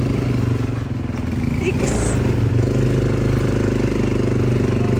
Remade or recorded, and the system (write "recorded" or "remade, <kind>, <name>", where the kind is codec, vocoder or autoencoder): recorded